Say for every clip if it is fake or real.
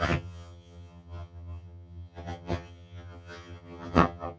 fake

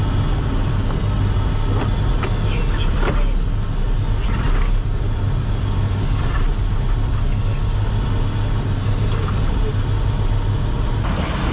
real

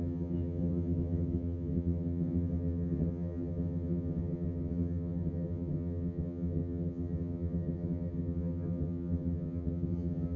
fake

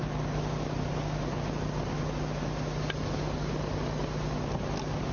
real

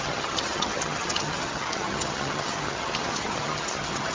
fake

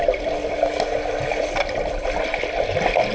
real